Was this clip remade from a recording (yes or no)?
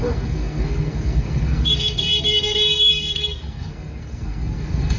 yes